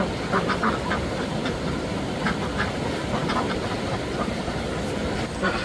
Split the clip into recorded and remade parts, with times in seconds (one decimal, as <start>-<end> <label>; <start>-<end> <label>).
0.0-1.4 recorded; 1.4-2.2 remade; 2.2-3.2 recorded; 3.2-3.7 remade; 3.7-5.6 recorded